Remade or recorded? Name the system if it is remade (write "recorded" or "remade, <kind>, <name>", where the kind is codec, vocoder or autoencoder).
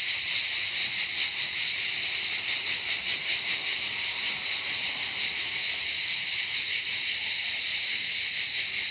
recorded